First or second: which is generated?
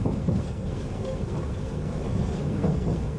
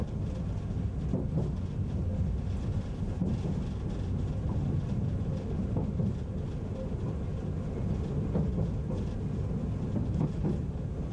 first